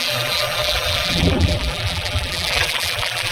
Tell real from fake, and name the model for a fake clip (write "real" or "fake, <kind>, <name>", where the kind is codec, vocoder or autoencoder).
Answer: fake, vocoder, BigVGAN v2